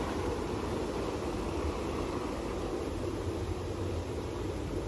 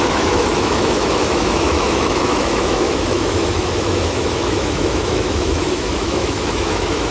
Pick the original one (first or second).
first